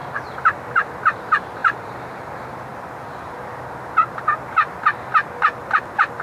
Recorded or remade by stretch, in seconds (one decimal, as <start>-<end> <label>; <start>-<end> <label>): 0.0-1.6 recorded; 1.6-2.1 remade; 2.1-6.2 recorded